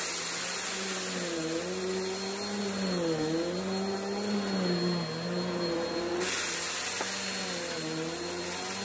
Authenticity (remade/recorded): recorded